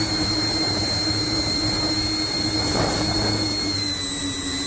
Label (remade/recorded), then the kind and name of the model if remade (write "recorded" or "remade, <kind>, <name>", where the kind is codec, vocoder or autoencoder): remade, vocoder, BigVGAN v2